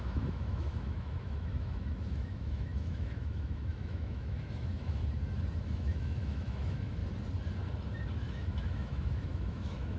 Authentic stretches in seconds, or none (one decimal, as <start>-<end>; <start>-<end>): 5.0-5.6; 7.0-8.2